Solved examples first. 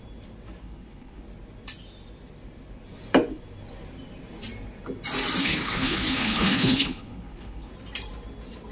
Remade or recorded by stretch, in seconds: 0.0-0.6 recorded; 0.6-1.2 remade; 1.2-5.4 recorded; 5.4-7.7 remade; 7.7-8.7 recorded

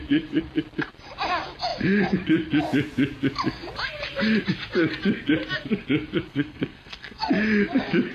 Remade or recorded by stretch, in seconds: 0.0-6.3 recorded; 6.3-7.3 remade; 7.3-8.1 recorded